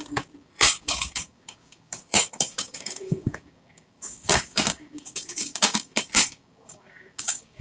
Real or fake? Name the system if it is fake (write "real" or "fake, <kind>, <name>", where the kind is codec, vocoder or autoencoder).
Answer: fake, codec, DAC